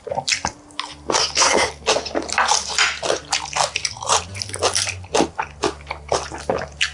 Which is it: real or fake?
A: real